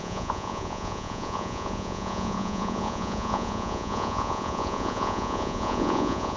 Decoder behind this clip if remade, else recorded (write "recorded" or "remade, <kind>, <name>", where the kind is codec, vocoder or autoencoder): remade, vocoder, Vocos